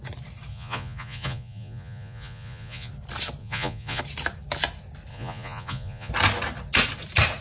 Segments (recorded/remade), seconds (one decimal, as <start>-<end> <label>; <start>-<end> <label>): 0.0-0.5 recorded; 0.5-2.9 remade; 2.9-3.4 recorded; 3.4-4.0 remade; 4.0-5.1 recorded; 5.1-6.1 remade; 6.1-7.4 recorded